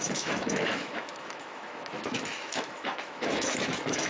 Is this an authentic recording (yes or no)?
no